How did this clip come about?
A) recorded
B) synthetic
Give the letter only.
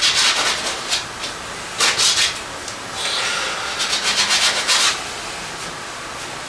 A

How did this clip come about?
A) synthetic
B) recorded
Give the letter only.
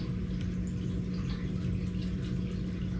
B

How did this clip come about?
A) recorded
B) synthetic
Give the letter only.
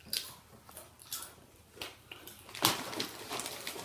A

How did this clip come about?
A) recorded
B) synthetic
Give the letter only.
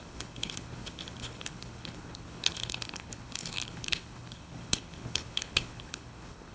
B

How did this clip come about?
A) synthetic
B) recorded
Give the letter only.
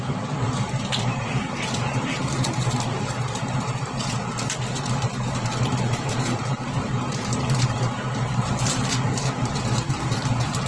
A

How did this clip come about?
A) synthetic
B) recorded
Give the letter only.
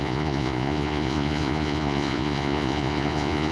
A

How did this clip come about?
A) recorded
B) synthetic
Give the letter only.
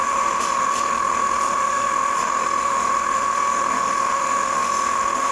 B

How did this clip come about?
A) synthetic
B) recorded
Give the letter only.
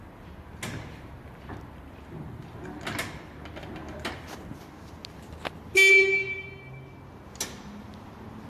B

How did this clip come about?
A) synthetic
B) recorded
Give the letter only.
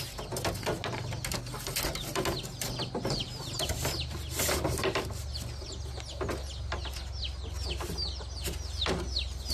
B